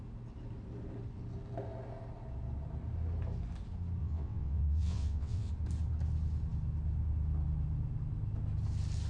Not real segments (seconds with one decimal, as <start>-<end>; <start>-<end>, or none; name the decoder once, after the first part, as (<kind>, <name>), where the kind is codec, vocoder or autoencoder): 4.0-5.5 (vocoder, WaveNeXt)

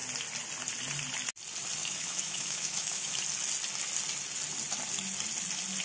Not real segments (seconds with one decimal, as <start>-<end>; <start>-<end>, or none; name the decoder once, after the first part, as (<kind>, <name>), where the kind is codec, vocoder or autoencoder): 1.8-3.1 (autoencoder, DAC-VAE)

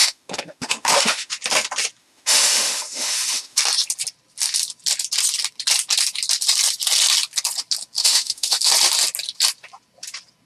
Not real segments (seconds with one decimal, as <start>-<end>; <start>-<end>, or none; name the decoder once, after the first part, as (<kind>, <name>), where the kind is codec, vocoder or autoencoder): 0.0-1.3 (autoencoder, DAC-VAE); 2.0-3.6; 8.0-8.7

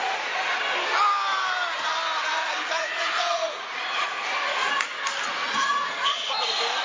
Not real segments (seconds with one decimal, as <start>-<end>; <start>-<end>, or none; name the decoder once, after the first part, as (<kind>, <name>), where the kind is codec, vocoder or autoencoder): 0.0-0.6 (vocoder, Vocos); 2.3-4.8; 5.4-6.3

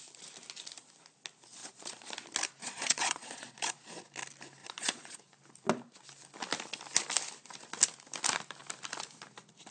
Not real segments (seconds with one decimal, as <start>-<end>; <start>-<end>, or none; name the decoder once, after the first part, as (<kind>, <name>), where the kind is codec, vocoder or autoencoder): 1.6-2.1 (vocoder, Vocos); 2.6-4.0; 4.6-5.2

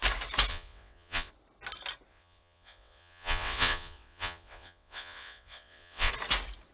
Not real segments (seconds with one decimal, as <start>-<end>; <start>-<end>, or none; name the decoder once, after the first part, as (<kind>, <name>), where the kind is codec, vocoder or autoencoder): 0.5-1.3 (vocoder, WaveNeXt); 2.1-6.1

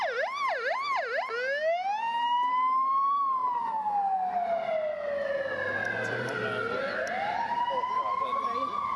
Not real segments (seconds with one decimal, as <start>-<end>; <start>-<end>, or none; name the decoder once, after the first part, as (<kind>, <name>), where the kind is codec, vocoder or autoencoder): none